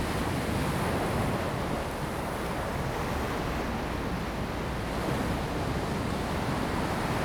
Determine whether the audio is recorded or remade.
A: recorded